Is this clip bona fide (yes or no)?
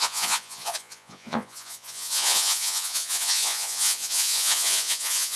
no